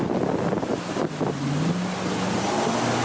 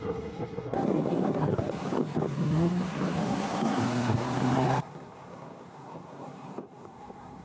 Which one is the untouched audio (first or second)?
first